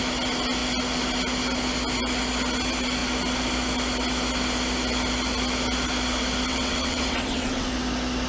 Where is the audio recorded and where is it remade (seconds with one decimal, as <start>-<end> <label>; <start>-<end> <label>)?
0.0-6.5 recorded; 6.5-7.7 remade; 7.7-8.3 recorded